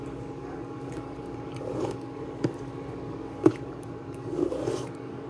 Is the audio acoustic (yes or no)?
no